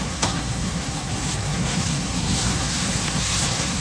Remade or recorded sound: remade